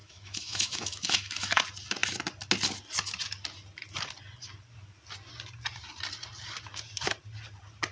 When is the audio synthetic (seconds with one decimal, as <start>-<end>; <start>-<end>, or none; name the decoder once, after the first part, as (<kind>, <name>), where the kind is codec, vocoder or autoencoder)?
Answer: 0.0-1.6 (autoencoder, DAC-VAE)